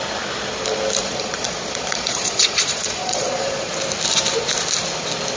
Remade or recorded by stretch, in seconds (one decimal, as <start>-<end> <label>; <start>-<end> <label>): 0.0-1.0 recorded; 1.0-3.7 remade; 3.7-5.4 recorded